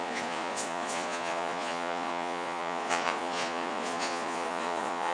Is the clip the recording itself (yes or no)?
no